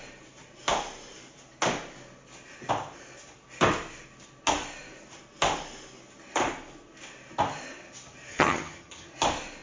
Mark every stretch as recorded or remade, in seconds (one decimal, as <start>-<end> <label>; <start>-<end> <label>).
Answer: 0.0-8.3 recorded; 8.3-9.1 remade; 9.1-9.6 recorded